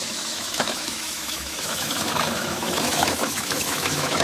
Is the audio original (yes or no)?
no